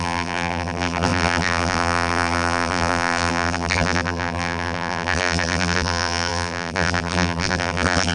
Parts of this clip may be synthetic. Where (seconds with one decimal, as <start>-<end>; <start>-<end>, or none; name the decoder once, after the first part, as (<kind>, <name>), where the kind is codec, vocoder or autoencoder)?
0.0-8.1 (vocoder, BigVGAN v2)